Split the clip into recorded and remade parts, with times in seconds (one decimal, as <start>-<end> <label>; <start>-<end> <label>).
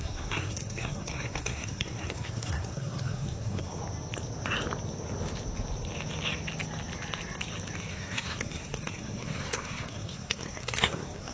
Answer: 0.0-3.8 remade; 3.8-7.9 recorded; 7.9-11.3 remade